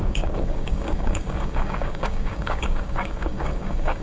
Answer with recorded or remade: remade